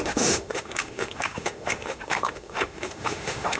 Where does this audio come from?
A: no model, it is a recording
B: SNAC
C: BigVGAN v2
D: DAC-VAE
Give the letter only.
D